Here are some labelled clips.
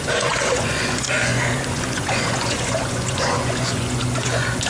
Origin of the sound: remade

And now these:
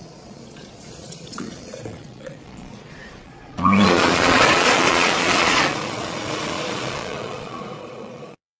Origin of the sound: remade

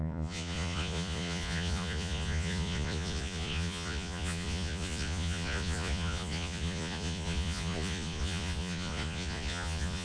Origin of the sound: remade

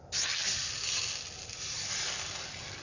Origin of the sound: recorded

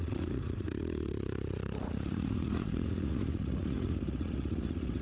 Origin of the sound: remade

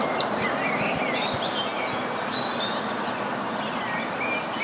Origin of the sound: recorded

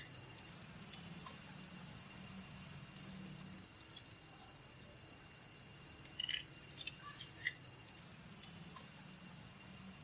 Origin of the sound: recorded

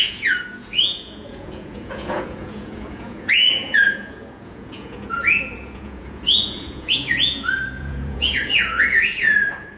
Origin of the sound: remade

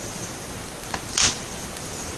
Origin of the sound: recorded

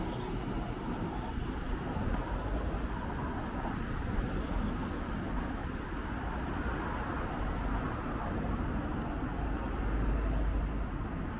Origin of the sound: recorded